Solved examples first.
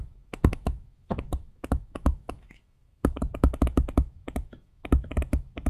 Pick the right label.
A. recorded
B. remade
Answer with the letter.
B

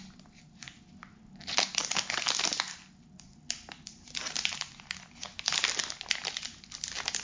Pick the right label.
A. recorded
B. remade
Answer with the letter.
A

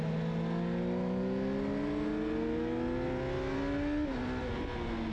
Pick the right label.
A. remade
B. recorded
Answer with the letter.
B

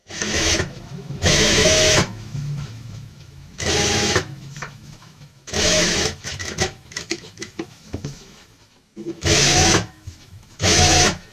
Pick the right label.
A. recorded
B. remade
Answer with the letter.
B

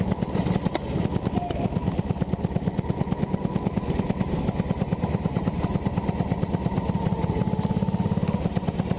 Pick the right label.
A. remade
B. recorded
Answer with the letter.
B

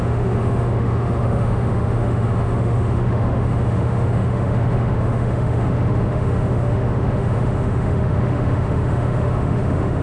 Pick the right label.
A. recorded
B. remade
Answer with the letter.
B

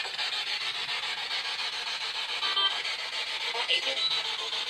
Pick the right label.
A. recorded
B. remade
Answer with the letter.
A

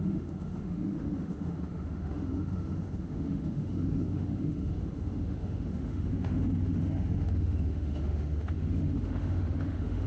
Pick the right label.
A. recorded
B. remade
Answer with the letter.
B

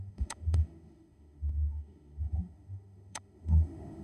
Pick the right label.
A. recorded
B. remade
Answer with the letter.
B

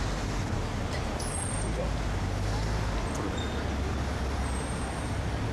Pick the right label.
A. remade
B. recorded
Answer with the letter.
B